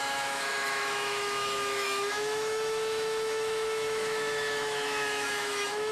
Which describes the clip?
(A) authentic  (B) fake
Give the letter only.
B